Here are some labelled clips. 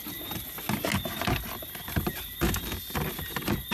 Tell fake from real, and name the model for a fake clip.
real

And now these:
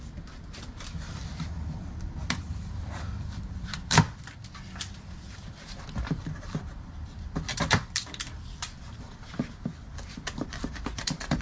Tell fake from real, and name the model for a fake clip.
fake, vocoder, BigVGAN v2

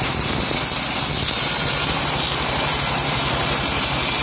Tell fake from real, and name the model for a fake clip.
real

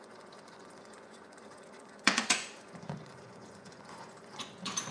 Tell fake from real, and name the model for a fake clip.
fake, vocoder, Vocos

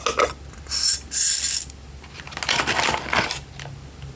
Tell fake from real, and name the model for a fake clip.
real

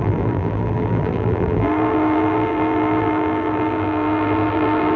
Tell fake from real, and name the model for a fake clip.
fake, vocoder, BigVGAN v2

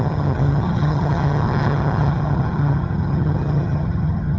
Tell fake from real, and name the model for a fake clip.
fake, vocoder, HiFi-GAN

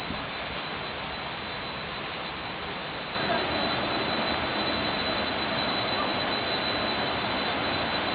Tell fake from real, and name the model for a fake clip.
real